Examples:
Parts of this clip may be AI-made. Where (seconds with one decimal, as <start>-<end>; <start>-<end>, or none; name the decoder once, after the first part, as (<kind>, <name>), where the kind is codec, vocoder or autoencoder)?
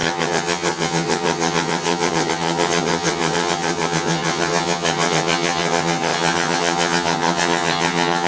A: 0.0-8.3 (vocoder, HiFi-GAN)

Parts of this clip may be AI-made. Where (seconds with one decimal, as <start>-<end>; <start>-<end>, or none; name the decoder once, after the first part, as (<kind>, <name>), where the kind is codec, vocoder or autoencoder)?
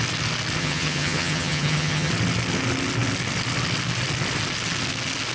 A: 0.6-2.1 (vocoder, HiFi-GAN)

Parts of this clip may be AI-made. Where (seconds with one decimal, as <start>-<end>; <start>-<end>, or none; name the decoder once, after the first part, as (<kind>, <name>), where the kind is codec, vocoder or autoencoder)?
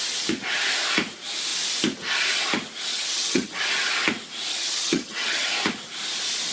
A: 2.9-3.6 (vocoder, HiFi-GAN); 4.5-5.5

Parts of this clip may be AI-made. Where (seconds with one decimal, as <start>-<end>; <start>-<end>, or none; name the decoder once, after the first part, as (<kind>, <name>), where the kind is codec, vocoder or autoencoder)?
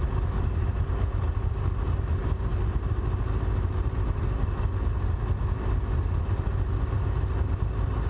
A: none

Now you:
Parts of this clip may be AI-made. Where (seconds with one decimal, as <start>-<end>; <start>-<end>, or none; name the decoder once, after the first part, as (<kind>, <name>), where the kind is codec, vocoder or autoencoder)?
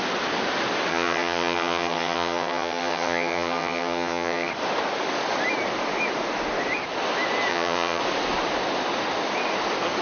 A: 0.9-4.5 (vocoder, HiFi-GAN); 7.5-8.0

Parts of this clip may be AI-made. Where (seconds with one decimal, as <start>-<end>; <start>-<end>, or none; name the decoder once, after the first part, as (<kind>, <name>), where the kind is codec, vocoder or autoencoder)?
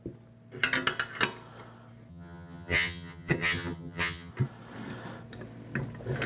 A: 2.1-4.3 (vocoder, HiFi-GAN)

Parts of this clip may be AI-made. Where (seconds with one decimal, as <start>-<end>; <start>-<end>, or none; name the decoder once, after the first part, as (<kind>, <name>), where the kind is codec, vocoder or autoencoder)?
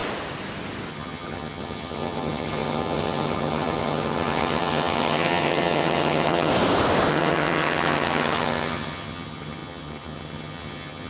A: 0.9-6.5 (vocoder, HiFi-GAN); 7.1-11.1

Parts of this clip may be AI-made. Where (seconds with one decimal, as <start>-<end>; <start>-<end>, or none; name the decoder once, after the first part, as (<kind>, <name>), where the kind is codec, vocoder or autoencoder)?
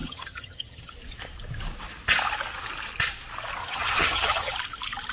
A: 0.0-0.9 (vocoder, HiFi-GAN); 3.6-4.5